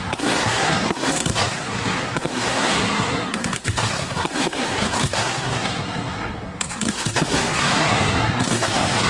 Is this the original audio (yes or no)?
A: no